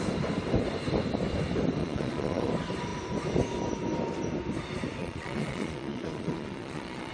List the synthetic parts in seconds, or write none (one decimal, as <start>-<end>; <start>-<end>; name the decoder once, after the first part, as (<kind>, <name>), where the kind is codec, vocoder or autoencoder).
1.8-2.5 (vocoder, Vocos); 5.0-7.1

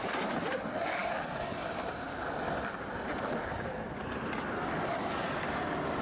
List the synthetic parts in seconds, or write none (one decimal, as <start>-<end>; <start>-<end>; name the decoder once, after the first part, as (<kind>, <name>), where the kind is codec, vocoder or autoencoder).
none

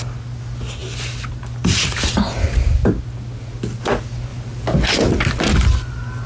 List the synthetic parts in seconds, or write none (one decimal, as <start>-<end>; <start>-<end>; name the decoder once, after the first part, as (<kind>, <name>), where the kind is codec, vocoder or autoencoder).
none